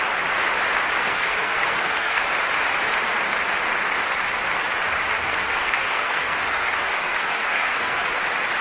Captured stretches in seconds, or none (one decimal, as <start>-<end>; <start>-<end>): 0.0-1.0; 2.2-5.1; 8.2-8.6